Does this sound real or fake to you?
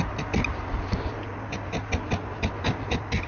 real